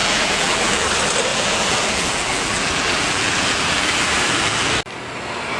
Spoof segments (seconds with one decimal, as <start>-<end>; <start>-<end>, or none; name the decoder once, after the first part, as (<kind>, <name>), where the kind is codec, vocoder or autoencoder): 0.0-0.9 (vocoder, BigVGAN v2); 1.3-4.7